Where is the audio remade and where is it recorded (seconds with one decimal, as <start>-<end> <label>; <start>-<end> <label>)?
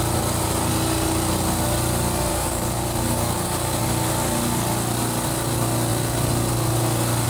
0.0-2.3 recorded; 2.3-3.8 remade; 3.8-7.3 recorded